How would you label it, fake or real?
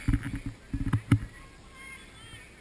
real